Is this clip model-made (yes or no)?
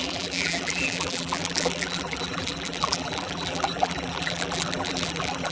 yes